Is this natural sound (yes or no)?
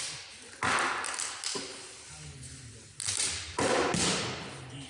yes